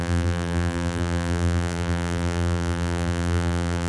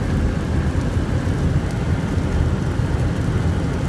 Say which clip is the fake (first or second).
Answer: first